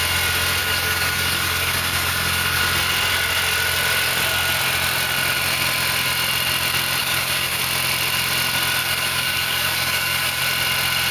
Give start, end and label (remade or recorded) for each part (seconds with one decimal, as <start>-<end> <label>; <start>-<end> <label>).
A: 0.0-0.6 recorded; 0.6-2.6 remade; 2.6-7.0 recorded; 7.0-7.6 remade; 7.6-8.8 recorded; 8.8-10.4 remade; 10.4-11.1 recorded

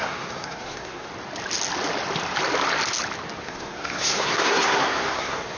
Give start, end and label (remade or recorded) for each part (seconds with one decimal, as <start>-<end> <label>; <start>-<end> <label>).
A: 0.0-1.1 remade; 1.1-3.4 recorded; 3.4-5.6 remade

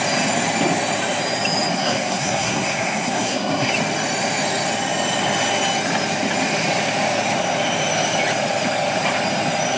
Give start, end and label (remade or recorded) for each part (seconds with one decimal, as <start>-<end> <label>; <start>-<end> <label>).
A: 0.0-1.7 recorded; 1.7-3.7 remade; 3.7-9.8 recorded

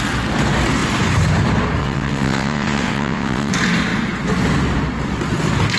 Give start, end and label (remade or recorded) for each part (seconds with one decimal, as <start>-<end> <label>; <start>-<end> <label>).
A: 0.0-1.8 recorded; 1.8-3.5 remade; 3.5-5.8 recorded

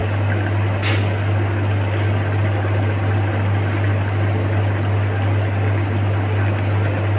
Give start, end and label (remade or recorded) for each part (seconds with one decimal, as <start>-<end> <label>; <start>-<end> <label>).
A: 0.0-7.2 recorded

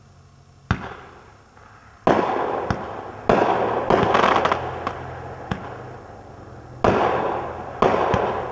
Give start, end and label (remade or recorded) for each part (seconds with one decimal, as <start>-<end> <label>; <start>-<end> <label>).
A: 0.0-8.5 recorded

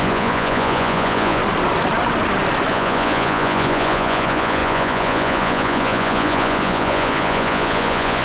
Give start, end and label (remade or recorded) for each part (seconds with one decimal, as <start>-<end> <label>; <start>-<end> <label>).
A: 0.0-1.4 remade; 1.4-2.7 recorded; 2.7-8.2 remade

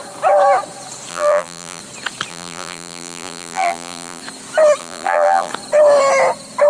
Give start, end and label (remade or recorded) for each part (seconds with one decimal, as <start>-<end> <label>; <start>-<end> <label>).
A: 0.0-1.1 recorded; 1.1-1.8 remade; 1.8-2.3 recorded; 2.3-4.2 remade; 4.2-4.8 recorded; 4.8-5.5 remade; 5.5-6.7 recorded